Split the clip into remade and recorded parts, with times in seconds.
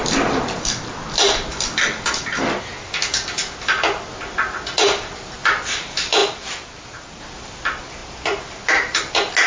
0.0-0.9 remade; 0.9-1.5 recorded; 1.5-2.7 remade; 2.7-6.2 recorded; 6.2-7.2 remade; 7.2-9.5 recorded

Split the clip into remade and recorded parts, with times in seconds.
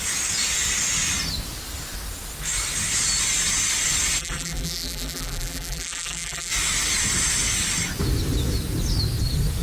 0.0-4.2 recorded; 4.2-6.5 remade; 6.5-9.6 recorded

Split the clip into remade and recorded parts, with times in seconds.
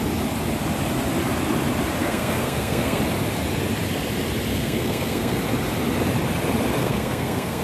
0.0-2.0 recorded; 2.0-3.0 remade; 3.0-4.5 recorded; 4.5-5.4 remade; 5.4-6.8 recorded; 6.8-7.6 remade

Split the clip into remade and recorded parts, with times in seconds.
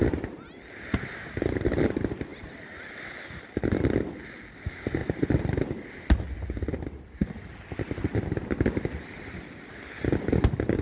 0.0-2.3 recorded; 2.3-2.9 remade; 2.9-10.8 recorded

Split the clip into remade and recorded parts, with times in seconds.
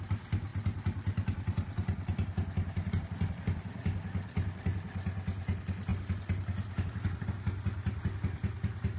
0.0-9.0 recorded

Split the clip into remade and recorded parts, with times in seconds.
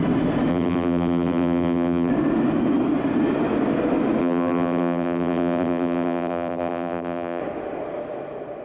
0.0-0.5 recorded; 0.5-2.1 remade; 2.1-4.2 recorded; 4.2-7.4 remade; 7.4-8.6 recorded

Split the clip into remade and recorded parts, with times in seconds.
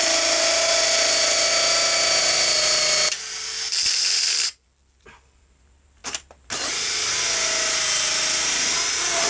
0.0-9.3 recorded